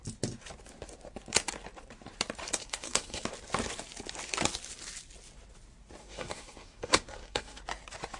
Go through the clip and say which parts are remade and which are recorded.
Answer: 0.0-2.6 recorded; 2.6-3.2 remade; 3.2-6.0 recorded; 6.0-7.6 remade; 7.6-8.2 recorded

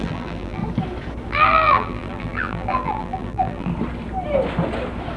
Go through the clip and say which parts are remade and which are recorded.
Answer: 0.0-0.6 remade; 0.6-1.3 recorded; 1.3-3.7 remade; 3.7-5.2 recorded

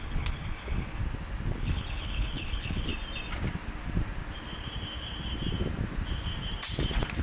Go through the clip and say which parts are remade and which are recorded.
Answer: 0.0-1.0 remade; 1.0-1.6 recorded; 1.6-2.9 remade; 2.9-7.2 recorded

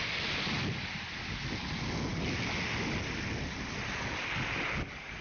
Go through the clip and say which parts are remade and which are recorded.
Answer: 0.0-5.2 recorded